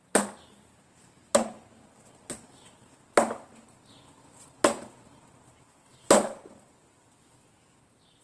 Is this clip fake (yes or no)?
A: no